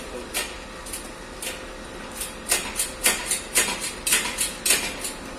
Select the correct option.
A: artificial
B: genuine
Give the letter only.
B